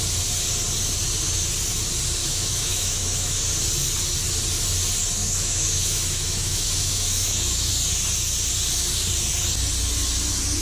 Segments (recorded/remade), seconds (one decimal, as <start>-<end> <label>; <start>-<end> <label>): 0.0-2.2 recorded; 2.2-3.4 remade; 3.4-5.2 recorded; 5.2-7.7 remade; 7.7-10.6 recorded